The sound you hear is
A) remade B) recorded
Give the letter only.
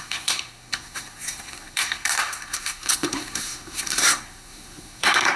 A